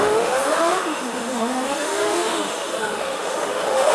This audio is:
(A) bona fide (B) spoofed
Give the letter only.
B